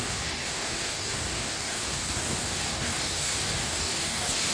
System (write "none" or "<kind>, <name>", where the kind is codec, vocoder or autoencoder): codec, DAC